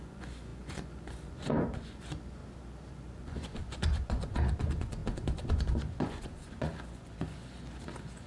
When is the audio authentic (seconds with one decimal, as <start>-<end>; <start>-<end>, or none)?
2.4-2.9